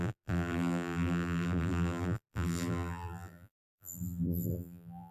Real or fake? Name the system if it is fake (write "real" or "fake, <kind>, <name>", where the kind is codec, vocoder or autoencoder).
fake, vocoder, BigVGAN v2